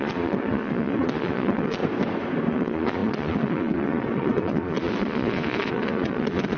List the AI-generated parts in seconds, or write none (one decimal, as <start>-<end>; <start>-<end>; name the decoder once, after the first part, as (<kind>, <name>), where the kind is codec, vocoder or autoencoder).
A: 0.0-1.8 (vocoder, Vocos); 2.5-6.6

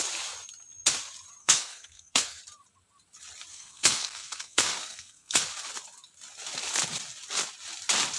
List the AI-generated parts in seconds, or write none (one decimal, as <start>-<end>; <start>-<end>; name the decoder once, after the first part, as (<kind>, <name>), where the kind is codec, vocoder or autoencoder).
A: 1.4-2.4 (codec, SNAC); 3.5-5.4